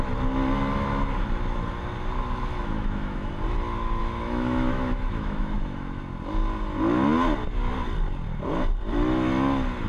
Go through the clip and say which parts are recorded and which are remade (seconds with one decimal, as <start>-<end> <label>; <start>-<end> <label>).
0.0-2.5 recorded; 2.5-3.3 remade; 3.3-4.0 recorded; 4.0-6.0 remade; 6.0-9.9 recorded